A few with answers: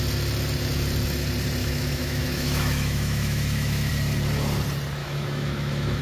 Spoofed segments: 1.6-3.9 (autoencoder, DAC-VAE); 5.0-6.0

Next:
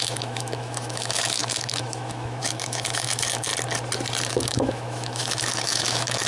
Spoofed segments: 0.0-3.5 (autoencoder, DAC-VAE); 4.3-6.3

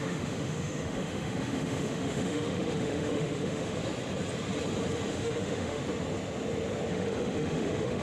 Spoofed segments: 0.0-3.8 (autoencoder, DAC-VAE); 5.1-5.8; 6.9-8.0

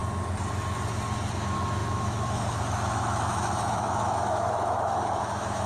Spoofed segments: 1.4-5.7 (autoencoder, DAC-VAE)